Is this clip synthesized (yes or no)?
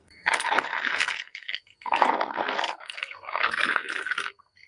yes